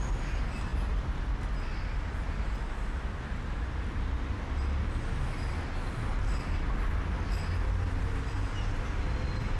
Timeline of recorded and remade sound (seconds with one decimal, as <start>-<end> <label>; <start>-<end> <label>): 0.0-9.6 recorded